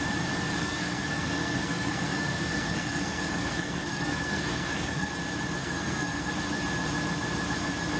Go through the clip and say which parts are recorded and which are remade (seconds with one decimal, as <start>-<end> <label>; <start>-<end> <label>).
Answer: 0.0-0.6 recorded; 0.6-5.1 remade; 5.1-5.6 recorded; 5.6-6.3 remade; 6.3-8.0 recorded